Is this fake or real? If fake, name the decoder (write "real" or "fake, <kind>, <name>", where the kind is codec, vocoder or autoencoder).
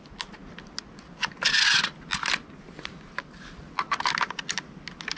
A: real